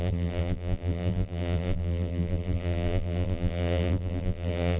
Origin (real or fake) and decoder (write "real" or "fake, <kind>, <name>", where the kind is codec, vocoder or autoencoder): fake, vocoder, BigVGAN v2